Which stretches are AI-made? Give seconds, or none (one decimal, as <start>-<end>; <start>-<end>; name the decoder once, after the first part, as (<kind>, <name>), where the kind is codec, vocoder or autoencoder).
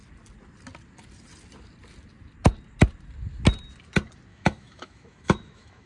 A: 4.3-5.9 (autoencoder, DAC-VAE)